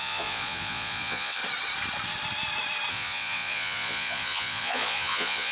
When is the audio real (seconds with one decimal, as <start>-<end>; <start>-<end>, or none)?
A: 1.4-2.9